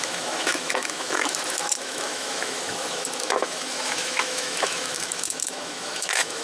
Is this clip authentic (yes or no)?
no